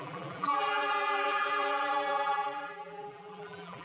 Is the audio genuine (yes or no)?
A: no